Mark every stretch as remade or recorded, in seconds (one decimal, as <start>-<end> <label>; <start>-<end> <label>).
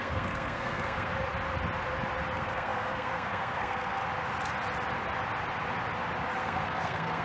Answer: 0.0-1.1 remade; 1.1-2.3 recorded; 2.3-4.0 remade; 4.0-6.4 recorded; 6.4-7.2 remade